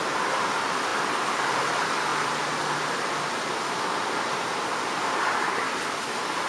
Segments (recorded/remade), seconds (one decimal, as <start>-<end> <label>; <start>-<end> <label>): 0.0-6.5 recorded